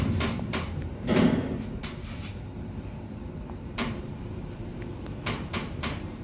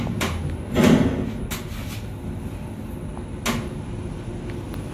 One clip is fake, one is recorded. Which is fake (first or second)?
first